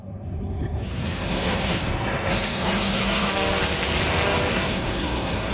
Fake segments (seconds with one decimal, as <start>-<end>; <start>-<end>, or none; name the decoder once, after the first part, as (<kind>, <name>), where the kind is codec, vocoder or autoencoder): 0.0-3.3 (codec, SNAC); 4.5-5.5